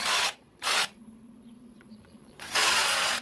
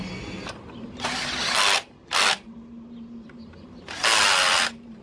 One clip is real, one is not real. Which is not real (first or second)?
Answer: first